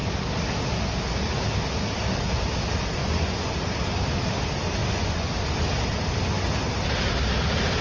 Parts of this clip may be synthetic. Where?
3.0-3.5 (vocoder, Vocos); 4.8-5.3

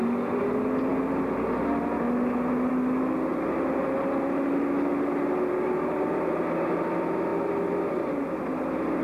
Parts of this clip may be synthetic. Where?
none

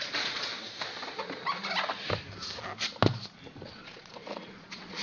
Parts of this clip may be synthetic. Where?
0.0-0.5 (vocoder, Vocos); 3.5-5.0

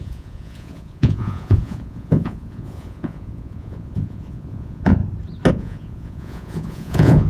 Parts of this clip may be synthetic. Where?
0.0-5.0 (vocoder, Vocos); 5.5-7.3

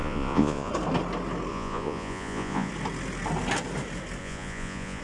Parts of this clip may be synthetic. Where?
0.0-0.7 (vocoder, Vocos); 1.5-2.7; 4.2-5.0

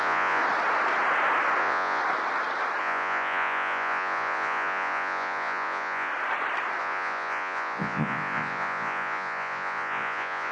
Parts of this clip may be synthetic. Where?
0.0-0.4 (vocoder, Vocos); 1.6-2.0; 2.8-6.1; 6.8-10.5